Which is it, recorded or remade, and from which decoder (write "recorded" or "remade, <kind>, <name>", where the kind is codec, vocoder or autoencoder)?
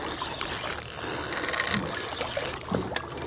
recorded